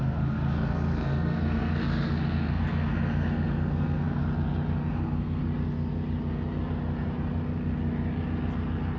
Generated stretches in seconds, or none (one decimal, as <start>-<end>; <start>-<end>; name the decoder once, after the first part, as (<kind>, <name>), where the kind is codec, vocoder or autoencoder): 0.0-4.2 (codec, SNAC); 4.9-5.4